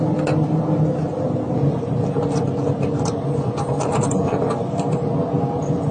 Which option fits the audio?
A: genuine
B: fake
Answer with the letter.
A